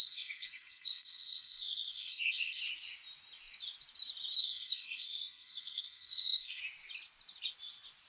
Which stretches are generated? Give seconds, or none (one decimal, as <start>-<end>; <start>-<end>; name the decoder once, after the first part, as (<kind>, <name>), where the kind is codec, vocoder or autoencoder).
0.0-2.6 (codec, SNAC); 4.4-6.6